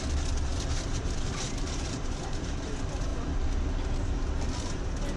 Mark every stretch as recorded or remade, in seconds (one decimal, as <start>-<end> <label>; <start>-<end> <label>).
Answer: 0.0-3.1 remade; 3.1-5.2 recorded